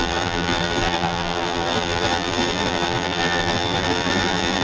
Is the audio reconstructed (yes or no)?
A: yes